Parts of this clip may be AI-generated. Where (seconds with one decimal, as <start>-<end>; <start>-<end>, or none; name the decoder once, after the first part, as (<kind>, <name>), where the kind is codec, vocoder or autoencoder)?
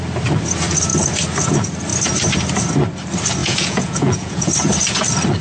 3.4-4.5 (vocoder, Vocos)